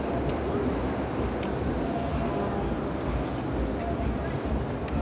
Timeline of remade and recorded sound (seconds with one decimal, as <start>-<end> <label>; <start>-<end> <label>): 0.0-5.0 recorded